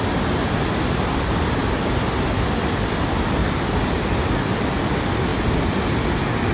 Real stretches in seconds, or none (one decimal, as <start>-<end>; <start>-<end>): 0.0-1.6; 2.9-3.4; 4.2-6.5